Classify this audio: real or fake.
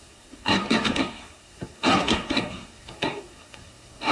fake